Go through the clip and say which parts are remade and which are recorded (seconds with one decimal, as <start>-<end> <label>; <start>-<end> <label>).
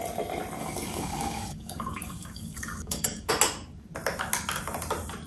0.0-0.6 recorded; 0.6-3.3 remade; 3.3-5.3 recorded